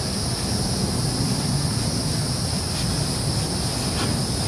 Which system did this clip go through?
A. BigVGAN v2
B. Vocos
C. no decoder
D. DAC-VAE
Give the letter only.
C